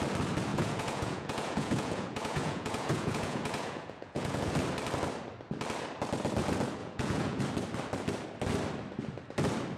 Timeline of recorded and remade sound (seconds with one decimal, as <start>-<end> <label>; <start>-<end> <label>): 0.0-0.5 recorded; 0.5-4.5 remade; 4.5-6.8 recorded; 6.8-7.4 remade; 7.4-9.8 recorded